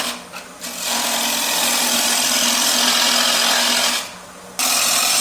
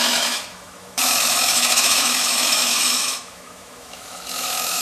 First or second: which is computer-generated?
second